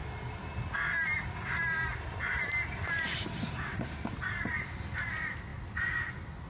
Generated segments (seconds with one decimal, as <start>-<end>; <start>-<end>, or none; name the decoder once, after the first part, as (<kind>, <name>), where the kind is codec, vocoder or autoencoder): none